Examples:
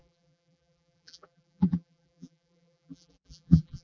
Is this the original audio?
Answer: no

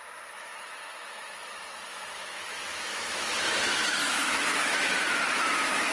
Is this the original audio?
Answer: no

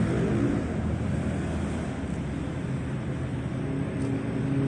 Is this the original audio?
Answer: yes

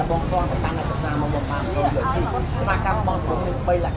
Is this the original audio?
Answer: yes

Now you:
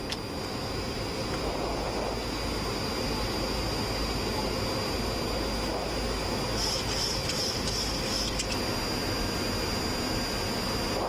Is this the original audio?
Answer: yes